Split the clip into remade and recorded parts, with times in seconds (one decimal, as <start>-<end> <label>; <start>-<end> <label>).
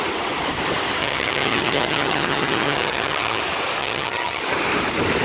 0.0-1.0 recorded; 1.0-3.4 remade; 3.4-3.8 recorded; 3.8-4.4 remade; 4.4-5.2 recorded